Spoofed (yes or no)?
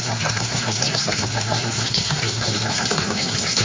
yes